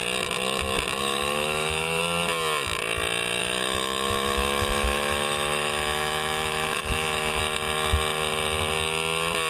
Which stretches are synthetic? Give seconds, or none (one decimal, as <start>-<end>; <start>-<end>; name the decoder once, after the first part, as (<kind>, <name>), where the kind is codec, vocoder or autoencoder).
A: 1.0-2.0 (autoencoder, DAC-VAE); 3.4-7.4